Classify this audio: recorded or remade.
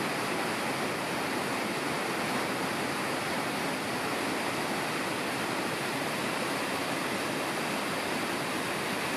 recorded